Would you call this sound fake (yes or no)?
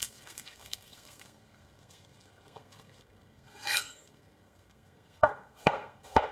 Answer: yes